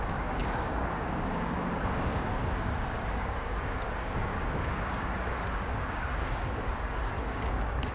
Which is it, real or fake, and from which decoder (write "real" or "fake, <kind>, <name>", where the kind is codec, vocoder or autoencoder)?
fake, codec, DAC